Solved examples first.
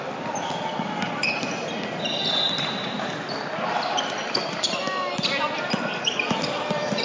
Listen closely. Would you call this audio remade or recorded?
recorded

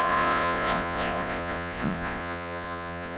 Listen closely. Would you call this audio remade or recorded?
remade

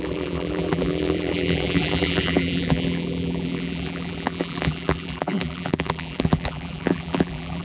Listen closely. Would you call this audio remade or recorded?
remade